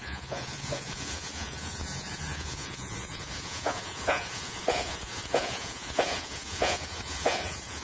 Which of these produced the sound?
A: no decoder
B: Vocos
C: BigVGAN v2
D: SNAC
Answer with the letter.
B